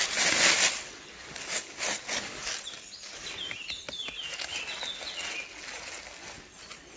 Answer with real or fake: real